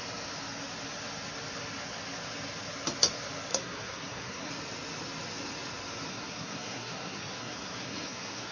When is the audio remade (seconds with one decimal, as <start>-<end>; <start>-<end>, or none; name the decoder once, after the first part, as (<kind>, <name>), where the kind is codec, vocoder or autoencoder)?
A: 3.5-4.5 (codec, SNAC); 6.1-8.5